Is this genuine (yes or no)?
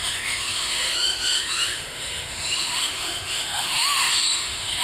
no